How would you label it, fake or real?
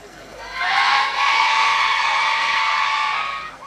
fake